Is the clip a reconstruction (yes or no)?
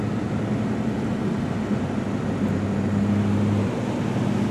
no